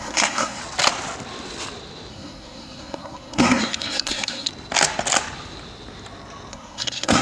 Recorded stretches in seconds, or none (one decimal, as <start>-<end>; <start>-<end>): 0.6-2.1; 4.5-6.5